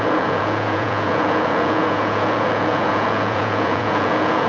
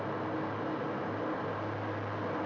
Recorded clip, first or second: second